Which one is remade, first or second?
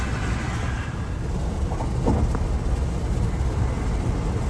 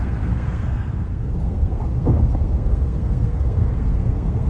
second